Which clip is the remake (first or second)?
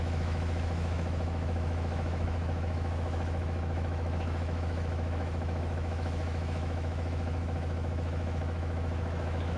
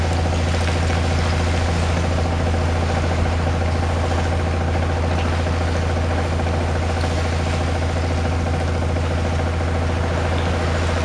first